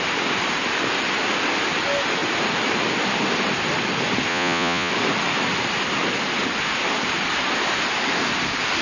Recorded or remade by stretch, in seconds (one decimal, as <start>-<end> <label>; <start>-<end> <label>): 0.0-4.3 recorded; 4.3-4.9 remade; 4.9-8.8 recorded